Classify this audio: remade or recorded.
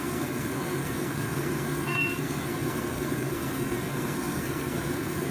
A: remade